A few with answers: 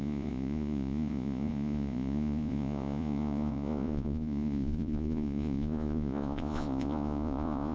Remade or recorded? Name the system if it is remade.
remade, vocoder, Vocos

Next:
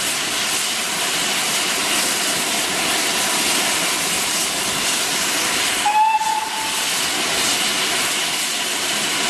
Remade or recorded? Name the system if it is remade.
recorded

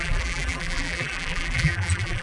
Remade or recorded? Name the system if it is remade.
remade, vocoder, BigVGAN v2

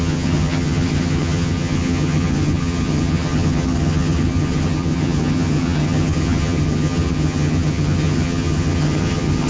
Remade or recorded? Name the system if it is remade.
remade, vocoder, HiFi-GAN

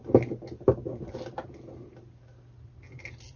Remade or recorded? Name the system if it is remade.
recorded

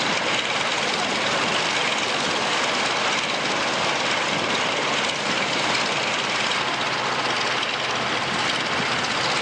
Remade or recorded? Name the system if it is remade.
recorded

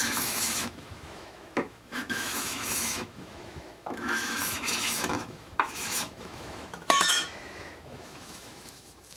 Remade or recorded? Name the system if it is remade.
remade, autoencoder, DAC-VAE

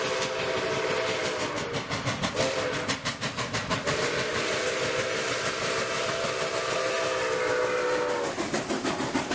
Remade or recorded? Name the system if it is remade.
recorded